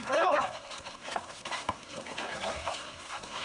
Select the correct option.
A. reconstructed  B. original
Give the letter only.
A